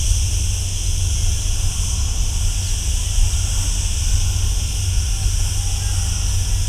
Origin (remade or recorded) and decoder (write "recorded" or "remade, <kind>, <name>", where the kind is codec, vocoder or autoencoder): recorded